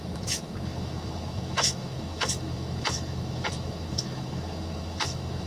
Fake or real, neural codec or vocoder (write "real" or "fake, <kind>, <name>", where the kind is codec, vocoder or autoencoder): fake, autoencoder, DAC-VAE